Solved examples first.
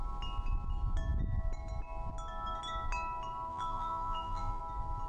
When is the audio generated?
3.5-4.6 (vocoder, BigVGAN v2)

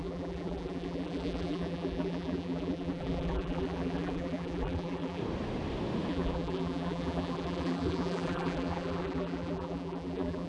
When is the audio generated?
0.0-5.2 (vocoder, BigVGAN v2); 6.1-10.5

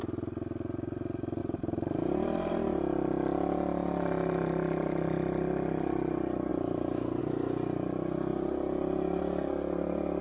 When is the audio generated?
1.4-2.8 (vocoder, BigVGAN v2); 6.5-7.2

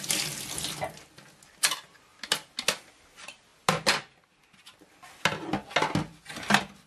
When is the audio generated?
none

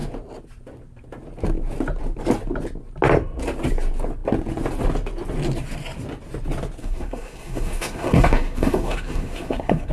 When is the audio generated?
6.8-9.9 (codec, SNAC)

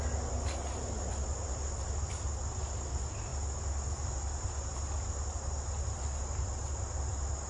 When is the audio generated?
none

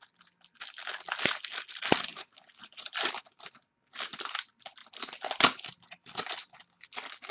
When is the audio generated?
2.1-3.5 (vocoder, BigVGAN v2)